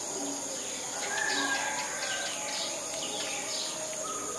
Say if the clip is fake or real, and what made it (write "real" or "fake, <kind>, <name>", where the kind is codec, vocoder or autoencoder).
real